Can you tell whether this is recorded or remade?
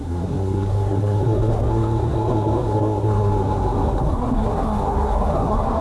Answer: remade